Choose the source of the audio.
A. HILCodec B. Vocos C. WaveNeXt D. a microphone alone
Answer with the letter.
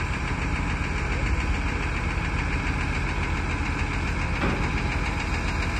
D